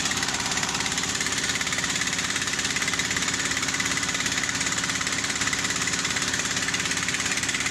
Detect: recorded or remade remade